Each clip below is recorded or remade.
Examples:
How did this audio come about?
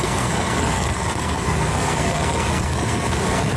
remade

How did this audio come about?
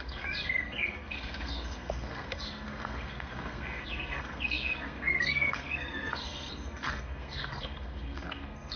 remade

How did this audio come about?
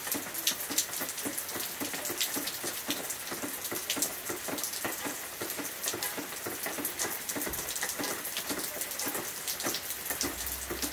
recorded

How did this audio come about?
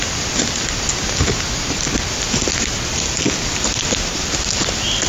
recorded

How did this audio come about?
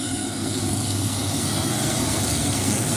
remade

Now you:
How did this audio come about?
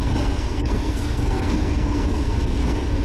remade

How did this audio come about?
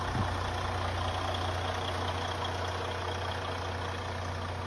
recorded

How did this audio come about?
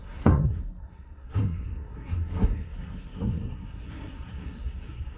remade